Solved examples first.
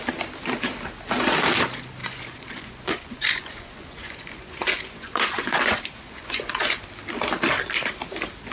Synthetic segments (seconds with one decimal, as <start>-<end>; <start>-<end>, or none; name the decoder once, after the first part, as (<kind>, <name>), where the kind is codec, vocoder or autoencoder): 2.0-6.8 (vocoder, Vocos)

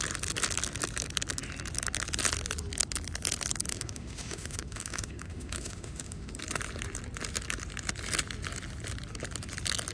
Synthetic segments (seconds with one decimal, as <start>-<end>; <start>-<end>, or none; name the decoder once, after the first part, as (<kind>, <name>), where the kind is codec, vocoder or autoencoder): 3.7-6.3 (autoencoder, DAC-VAE)

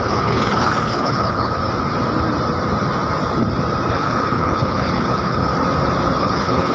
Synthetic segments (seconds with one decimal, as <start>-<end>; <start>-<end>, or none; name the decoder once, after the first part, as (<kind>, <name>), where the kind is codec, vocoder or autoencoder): 0.0-1.6 (codec, HILCodec); 3.9-5.5; 6.2-6.7

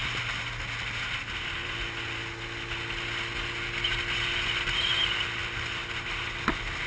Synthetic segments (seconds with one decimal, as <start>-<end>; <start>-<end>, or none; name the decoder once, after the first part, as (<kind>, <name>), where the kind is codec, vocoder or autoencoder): none

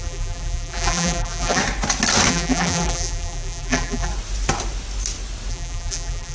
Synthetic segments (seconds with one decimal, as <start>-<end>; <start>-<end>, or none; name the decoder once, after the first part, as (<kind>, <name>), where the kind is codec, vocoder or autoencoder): 0.0-1.6 (vocoder, BigVGAN v2); 2.3-4.1; 5.5-6.3

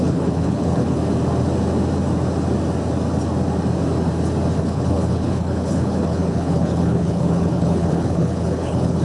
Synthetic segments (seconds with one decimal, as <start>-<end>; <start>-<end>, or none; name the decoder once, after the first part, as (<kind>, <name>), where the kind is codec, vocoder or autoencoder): 0.0-1.0 (codec, HILCodec); 4.6-9.0

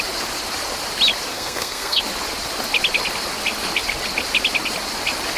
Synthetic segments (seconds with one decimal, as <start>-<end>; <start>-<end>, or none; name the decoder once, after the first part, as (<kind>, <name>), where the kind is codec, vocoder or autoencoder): 1.3-2.0 (codec, SNAC)

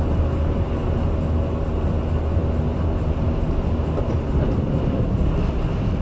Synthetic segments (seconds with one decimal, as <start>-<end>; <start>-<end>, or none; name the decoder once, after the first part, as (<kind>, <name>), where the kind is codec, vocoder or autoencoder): none